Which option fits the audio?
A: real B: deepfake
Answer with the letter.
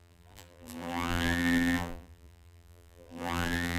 B